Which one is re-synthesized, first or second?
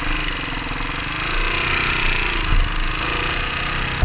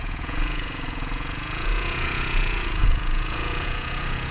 second